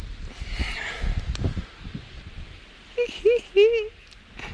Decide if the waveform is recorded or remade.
recorded